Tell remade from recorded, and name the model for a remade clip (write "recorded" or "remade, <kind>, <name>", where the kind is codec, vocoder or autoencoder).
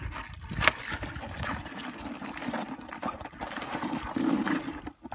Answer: recorded